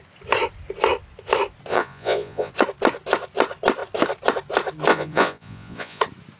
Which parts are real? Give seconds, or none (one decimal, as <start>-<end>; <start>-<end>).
0.0-1.7; 2.5-4.9; 6.0-6.4